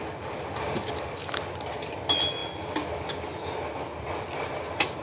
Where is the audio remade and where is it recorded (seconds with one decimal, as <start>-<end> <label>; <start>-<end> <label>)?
0.0-5.0 recorded